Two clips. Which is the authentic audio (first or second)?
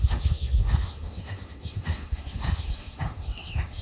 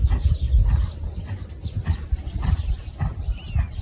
second